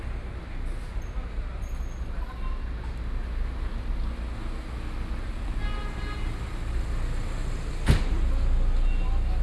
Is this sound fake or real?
real